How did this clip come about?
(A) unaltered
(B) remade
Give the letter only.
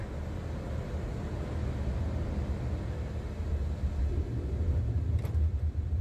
A